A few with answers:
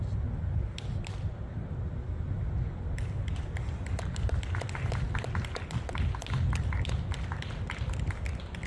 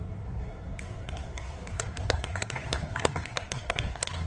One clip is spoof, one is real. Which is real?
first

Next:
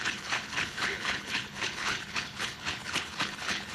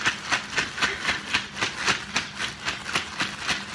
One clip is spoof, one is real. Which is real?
second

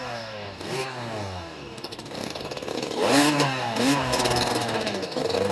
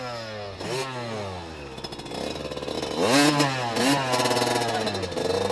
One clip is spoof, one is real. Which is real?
second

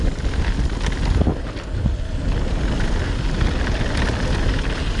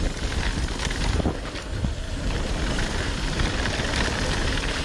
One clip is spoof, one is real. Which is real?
first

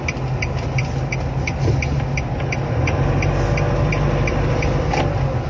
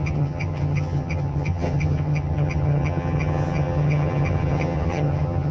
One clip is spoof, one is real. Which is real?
first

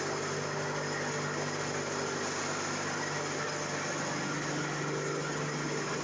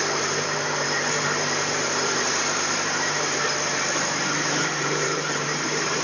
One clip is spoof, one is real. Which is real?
first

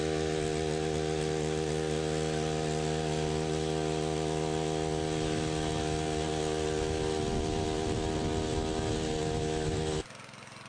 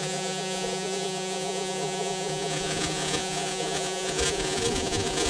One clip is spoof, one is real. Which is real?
first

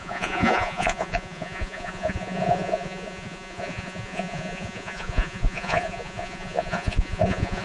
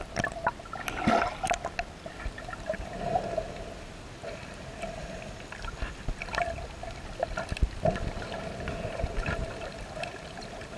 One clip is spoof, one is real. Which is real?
second